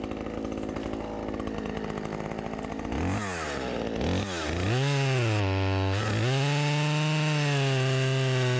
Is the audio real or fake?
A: real